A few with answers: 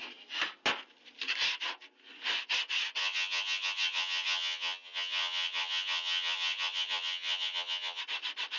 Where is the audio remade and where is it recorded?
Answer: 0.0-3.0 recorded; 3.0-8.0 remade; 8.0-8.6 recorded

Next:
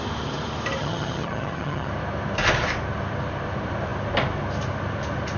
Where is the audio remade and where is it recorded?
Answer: 0.0-0.8 recorded; 0.8-1.9 remade; 1.9-5.4 recorded

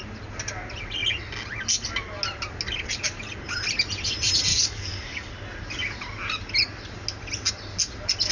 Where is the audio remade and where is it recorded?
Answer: 0.0-4.5 recorded; 4.5-5.3 remade; 5.3-8.3 recorded